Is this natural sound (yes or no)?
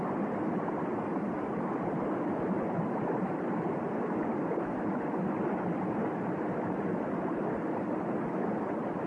yes